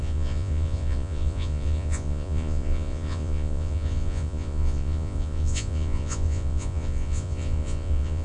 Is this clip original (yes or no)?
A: no